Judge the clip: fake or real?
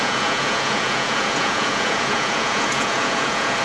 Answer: fake